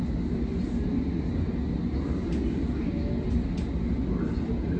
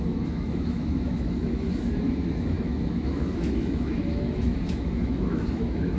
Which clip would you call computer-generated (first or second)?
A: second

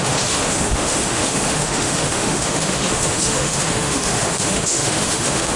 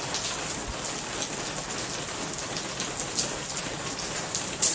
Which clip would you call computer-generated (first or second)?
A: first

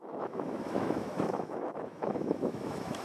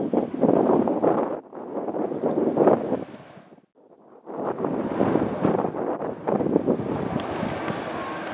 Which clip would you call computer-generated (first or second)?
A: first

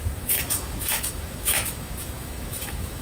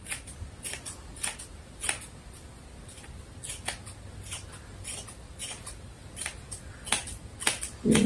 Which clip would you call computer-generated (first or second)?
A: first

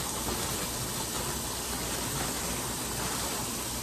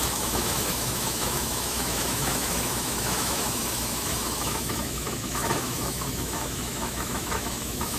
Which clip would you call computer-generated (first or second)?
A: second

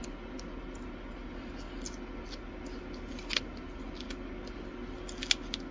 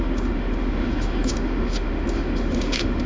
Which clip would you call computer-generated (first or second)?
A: second